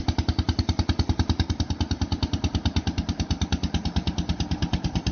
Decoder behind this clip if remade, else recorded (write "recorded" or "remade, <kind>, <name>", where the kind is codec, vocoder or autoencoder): recorded